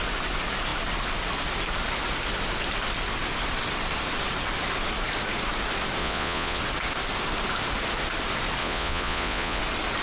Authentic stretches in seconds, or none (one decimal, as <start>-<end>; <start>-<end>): 0.0-6.0; 6.6-8.6; 9.6-10.0